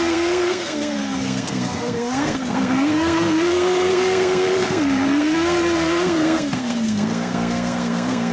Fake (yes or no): yes